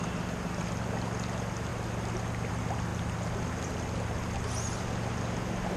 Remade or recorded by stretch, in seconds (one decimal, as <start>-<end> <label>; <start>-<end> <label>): 0.0-5.8 recorded